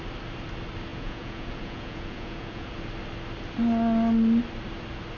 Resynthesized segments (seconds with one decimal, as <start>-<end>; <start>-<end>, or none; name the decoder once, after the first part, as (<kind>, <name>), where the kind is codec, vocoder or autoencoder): 0.9-2.7 (vocoder, Vocos)